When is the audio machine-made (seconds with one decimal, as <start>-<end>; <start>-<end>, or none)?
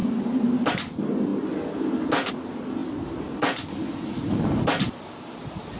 none